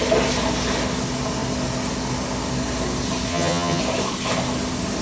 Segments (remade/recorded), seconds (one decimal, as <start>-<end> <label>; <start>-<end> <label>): 0.0-3.3 recorded; 3.3-3.8 remade; 3.8-5.0 recorded